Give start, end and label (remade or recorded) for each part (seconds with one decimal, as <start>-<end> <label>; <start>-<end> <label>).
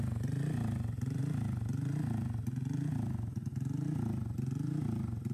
0.0-5.3 recorded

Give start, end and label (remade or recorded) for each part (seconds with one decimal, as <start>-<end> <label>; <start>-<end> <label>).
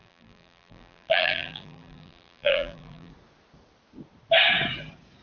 0.0-3.1 remade; 3.1-5.2 recorded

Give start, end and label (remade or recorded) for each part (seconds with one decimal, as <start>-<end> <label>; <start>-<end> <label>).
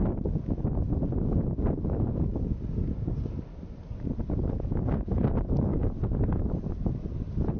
0.0-5.7 recorded; 5.7-6.7 remade; 6.7-7.6 recorded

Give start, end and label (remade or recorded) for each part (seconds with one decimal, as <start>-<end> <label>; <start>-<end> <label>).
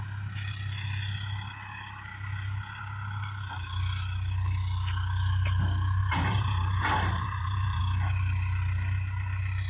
0.0-6.0 recorded; 6.0-7.8 remade; 7.8-9.7 recorded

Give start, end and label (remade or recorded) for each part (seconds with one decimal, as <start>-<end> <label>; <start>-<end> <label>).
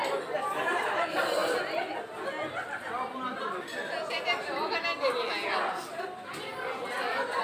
0.0-1.4 remade; 1.4-5.8 recorded; 5.8-6.5 remade; 6.5-7.4 recorded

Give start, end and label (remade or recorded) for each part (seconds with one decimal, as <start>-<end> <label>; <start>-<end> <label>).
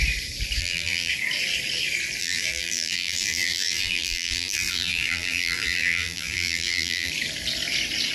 0.0-0.6 recorded; 0.6-1.1 remade; 1.1-2.2 recorded; 2.2-7.1 remade; 7.1-8.1 recorded